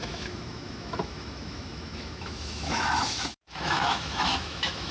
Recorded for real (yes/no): no